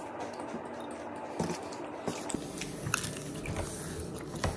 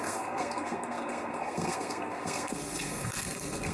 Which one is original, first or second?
first